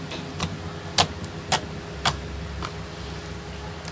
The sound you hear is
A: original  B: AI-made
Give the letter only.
A